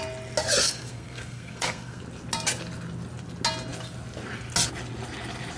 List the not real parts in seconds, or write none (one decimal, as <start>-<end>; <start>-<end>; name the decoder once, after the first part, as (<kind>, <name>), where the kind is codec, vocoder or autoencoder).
0.6-2.0 (codec, SNAC)